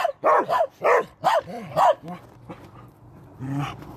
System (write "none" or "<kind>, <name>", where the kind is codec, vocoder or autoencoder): none